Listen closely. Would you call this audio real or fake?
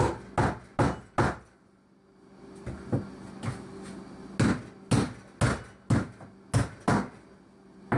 real